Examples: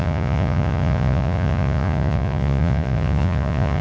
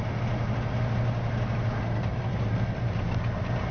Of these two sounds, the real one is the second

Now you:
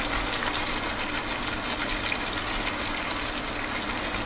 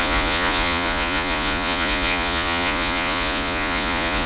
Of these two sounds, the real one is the first